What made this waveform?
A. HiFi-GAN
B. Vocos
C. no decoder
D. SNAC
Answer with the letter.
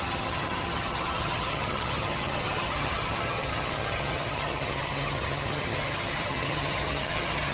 A